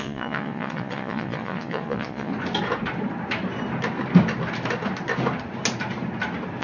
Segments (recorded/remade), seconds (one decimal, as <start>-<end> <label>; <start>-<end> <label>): 0.0-2.3 remade; 2.3-6.6 recorded